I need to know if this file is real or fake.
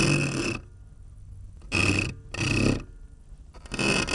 real